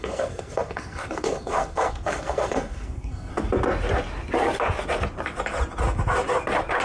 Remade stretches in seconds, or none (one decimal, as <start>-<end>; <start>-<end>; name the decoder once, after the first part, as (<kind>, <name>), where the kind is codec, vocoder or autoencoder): 0.0-3.3 (codec, SNAC)